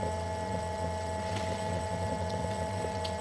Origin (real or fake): fake